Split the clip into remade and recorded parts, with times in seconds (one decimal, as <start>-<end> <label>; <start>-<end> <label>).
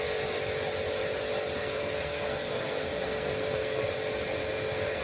0.0-1.6 recorded; 1.6-3.9 remade; 3.9-4.4 recorded; 4.4-5.0 remade